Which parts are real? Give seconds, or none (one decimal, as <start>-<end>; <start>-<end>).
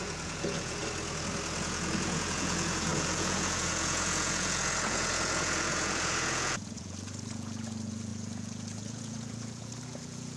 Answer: 0.8-1.6